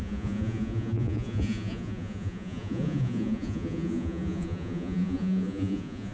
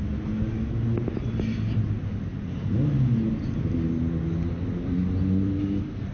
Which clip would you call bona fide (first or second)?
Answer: second